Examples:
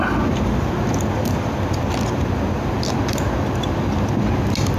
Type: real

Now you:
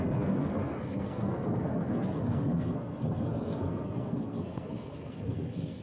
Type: fake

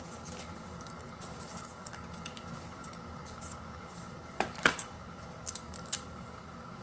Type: fake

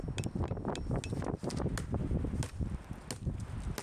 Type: real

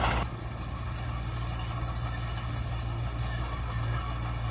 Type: real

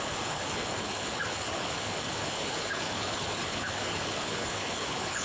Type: fake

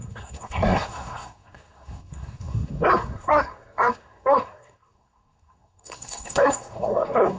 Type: fake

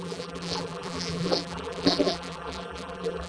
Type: fake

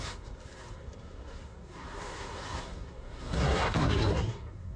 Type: fake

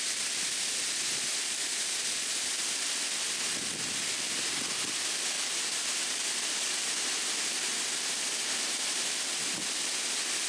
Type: real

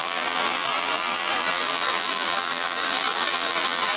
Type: fake